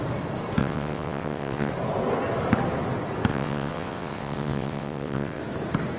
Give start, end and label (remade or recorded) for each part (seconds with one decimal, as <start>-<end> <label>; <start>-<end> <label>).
0.0-0.6 recorded; 0.6-1.7 remade; 1.7-3.3 recorded; 3.3-5.4 remade; 5.4-6.0 recorded